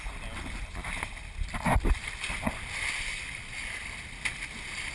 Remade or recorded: recorded